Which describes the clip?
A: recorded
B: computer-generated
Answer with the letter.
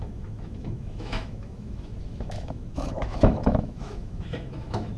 B